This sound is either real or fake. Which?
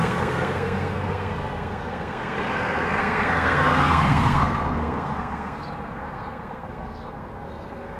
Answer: fake